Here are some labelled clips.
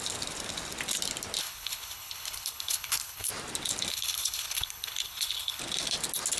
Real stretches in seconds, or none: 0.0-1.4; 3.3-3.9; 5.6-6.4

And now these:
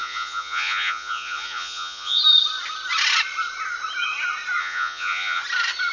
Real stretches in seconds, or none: 2.2-4.6; 5.4-5.9

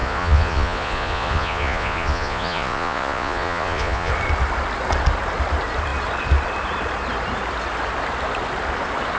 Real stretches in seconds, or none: 4.1-9.2

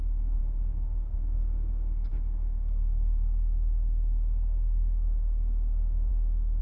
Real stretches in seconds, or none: none

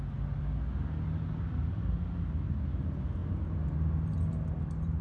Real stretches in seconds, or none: 0.0-5.0

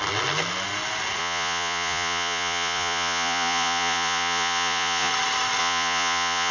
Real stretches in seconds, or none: 0.0-1.2; 5.1-5.6

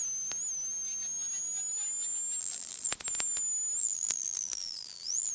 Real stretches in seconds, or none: 0.0-2.4; 2.9-3.8

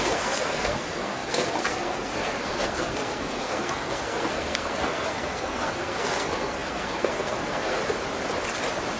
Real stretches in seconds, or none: 7.8-9.0